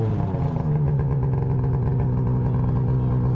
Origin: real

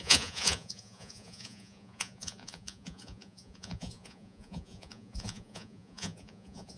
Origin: fake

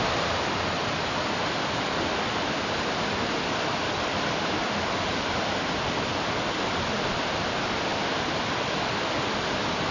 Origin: real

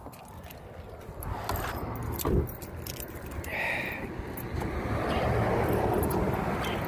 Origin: real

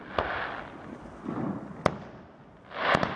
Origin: real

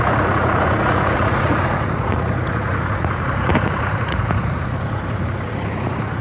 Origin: fake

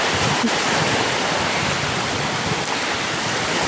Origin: real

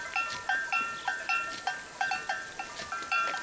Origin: fake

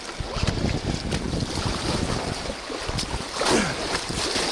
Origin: real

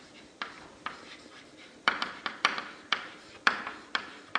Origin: fake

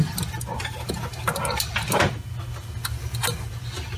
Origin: real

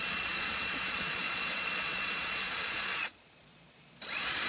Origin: fake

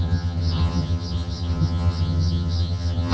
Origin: fake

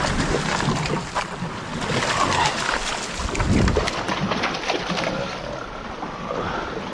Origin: real